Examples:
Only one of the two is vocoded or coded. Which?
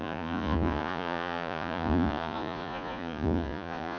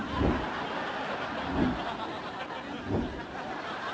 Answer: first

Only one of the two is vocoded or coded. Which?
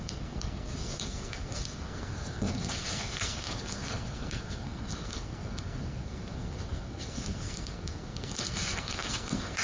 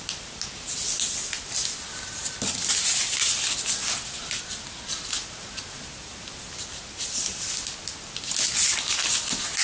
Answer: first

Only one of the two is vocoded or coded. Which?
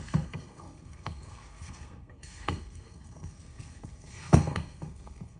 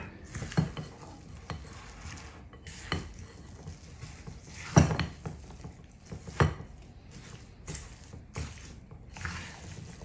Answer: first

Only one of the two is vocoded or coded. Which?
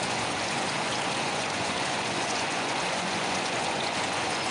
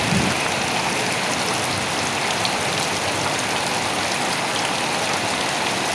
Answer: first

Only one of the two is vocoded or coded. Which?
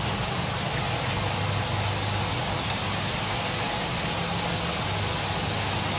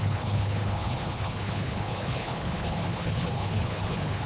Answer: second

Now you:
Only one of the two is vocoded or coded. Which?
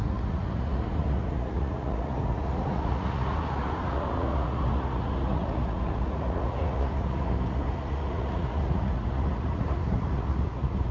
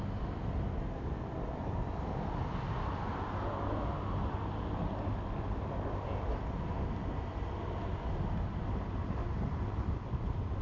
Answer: first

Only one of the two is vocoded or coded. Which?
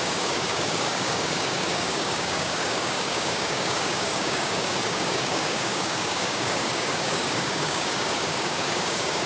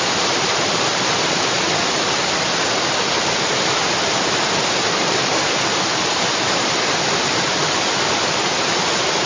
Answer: first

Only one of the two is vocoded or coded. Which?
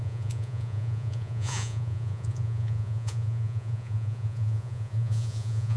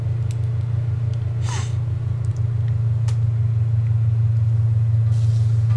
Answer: first